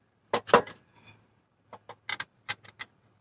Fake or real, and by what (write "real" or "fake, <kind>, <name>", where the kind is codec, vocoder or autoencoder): real